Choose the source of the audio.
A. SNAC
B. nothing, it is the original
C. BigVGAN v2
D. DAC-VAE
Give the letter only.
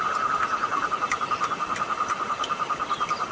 B